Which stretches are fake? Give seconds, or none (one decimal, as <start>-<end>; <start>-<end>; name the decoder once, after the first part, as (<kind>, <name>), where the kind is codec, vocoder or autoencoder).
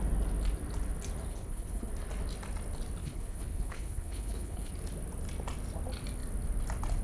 1.3-1.9 (codec, HILCodec); 3.0-4.7